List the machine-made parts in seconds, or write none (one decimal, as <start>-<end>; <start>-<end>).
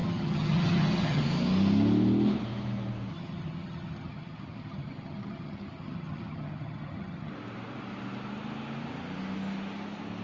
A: 0.0-1.2; 3.1-7.3